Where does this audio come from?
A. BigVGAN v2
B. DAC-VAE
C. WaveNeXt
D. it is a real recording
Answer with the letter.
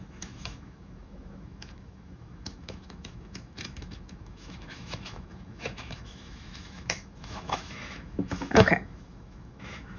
B